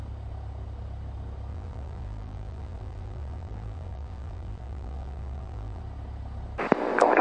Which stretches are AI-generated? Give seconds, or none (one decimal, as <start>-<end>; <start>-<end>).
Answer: 1.5-5.8